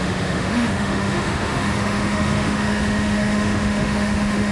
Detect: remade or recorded remade